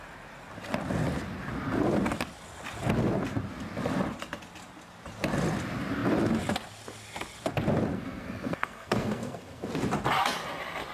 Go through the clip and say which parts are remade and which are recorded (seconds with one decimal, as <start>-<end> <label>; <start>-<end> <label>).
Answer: 0.0-7.9 recorded; 7.9-9.7 remade; 9.7-10.9 recorded